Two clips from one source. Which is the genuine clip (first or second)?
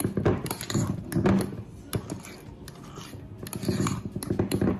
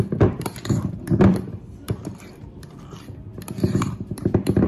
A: first